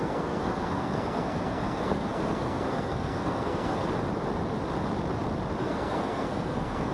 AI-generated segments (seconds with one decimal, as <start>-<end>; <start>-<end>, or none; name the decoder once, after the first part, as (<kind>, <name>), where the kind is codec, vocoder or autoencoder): 0.0-3.8 (codec, SNAC); 5.6-6.9